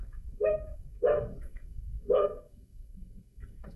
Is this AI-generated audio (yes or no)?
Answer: yes